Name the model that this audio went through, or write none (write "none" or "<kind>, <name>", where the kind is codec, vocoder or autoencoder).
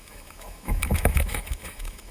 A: autoencoder, DAC-VAE